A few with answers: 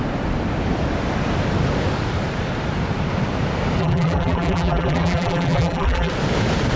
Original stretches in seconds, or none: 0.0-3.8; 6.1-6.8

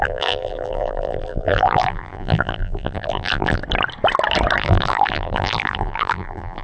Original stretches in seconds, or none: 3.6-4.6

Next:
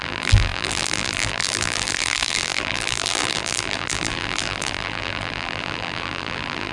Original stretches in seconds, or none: none

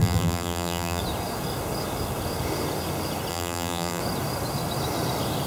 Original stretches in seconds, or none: 1.0-3.3; 4.0-5.5

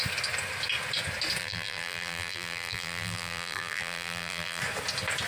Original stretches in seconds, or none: 0.0-1.4; 4.6-5.3

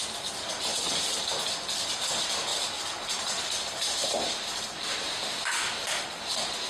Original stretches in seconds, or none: 0.0-0.7; 1.3-2.5

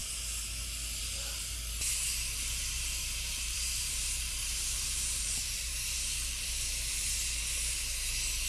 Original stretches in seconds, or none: 0.0-2.6; 7.2-8.5